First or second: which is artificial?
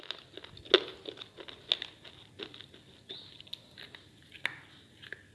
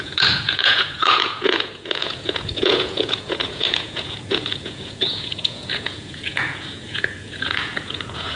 second